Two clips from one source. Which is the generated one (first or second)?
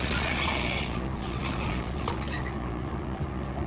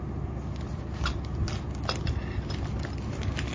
first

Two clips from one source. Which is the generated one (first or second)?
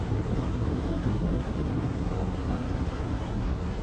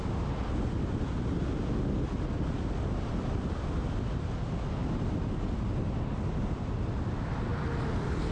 first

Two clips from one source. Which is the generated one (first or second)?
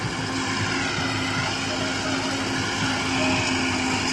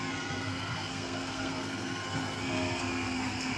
second